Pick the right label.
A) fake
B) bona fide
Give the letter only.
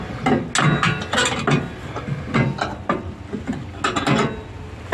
B